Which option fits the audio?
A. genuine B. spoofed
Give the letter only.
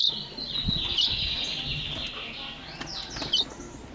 A